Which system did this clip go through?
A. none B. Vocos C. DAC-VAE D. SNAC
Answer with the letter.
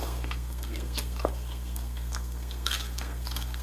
D